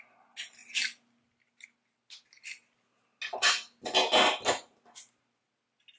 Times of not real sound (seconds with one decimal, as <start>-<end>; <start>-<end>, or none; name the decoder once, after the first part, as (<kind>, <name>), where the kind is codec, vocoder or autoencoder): none